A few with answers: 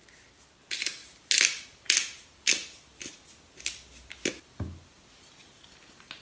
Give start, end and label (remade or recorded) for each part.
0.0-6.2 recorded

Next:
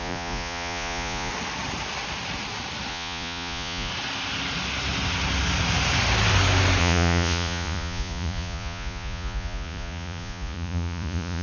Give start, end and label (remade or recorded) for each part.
0.0-1.3 remade; 1.3-2.9 recorded; 2.9-3.9 remade; 3.9-6.8 recorded; 6.8-11.4 remade